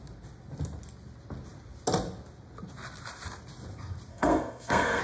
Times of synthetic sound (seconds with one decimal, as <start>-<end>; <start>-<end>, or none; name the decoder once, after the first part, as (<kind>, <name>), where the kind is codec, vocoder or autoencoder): 4.1-5.0 (codec, SNAC)